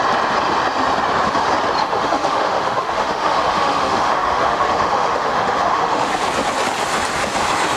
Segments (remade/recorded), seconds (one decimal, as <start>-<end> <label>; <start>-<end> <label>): 0.0-1.8 recorded; 1.8-6.2 remade; 6.2-7.8 recorded